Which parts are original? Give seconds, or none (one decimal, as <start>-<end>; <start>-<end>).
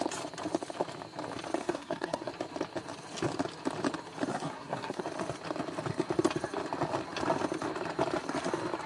0.0-1.6; 2.3-4.3; 5.0-8.9